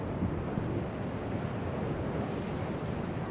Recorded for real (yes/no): yes